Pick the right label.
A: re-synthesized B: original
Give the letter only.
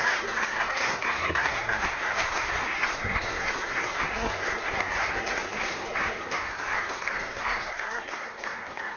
A